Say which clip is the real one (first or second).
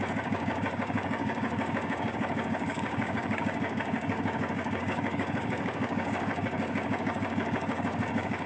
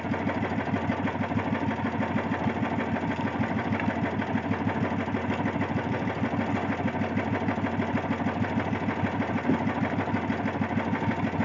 second